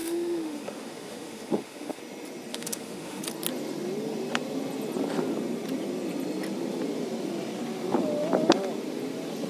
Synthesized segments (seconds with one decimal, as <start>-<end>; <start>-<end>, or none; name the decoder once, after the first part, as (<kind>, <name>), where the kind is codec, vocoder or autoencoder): 0.0-2.0 (autoencoder, DAC-VAE); 2.5-3.2